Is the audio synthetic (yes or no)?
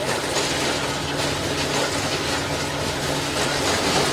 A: no